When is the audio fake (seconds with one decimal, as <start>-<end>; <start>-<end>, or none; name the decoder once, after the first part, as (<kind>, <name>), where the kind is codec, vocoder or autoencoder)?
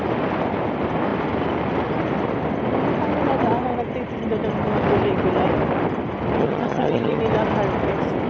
6.4-7.2 (vocoder, HiFi-GAN)